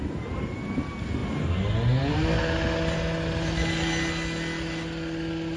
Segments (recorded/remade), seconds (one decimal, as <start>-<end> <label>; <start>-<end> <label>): 0.0-5.6 recorded